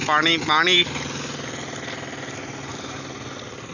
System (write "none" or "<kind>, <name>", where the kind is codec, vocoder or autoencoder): none